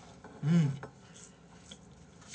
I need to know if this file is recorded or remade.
recorded